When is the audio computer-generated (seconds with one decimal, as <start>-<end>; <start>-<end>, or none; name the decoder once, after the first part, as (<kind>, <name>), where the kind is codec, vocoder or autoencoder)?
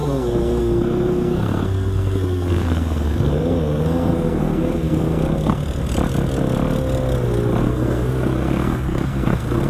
0.0-5.6 (codec, SNAC); 7.6-9.7